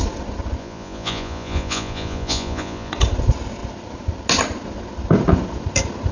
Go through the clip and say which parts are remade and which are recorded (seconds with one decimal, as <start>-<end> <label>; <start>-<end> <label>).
0.0-0.6 recorded; 0.6-2.9 remade; 2.9-6.1 recorded